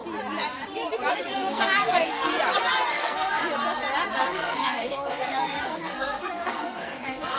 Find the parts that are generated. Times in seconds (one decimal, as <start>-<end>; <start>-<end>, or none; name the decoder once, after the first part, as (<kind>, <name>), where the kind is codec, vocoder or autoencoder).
1.1-2.3 (codec, SNAC); 2.9-3.4; 4.1-7.4